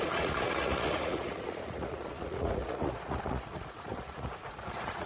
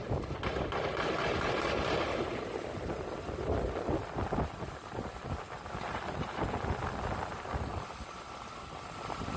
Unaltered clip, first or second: second